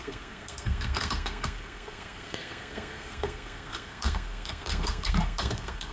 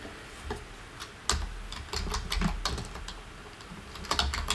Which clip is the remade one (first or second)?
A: first